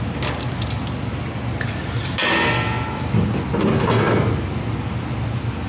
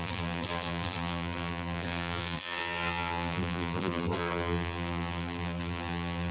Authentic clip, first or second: first